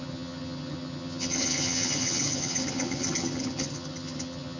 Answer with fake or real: fake